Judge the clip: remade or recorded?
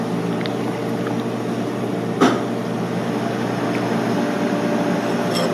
recorded